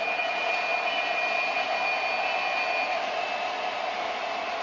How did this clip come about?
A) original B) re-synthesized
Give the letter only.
A